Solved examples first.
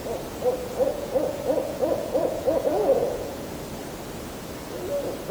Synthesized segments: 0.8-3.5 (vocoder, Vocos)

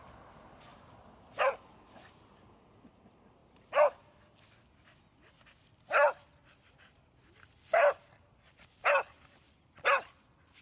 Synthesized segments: none

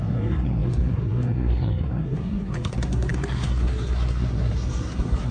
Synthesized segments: 0.0-5.3 (codec, SNAC)